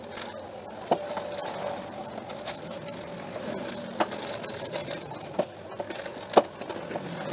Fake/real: real